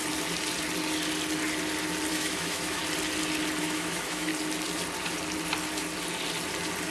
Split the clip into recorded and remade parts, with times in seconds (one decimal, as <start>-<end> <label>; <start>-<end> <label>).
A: 0.0-2.1 recorded; 2.1-2.8 remade; 2.8-3.6 recorded; 3.6-4.3 remade; 4.3-6.9 recorded